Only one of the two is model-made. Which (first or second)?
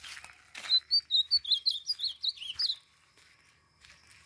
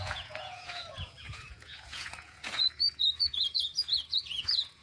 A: second